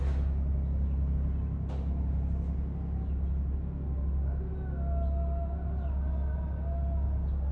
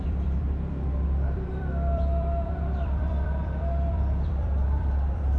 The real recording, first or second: first